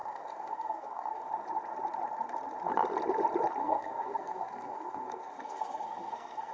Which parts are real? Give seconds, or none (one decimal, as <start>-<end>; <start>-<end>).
1.2-3.6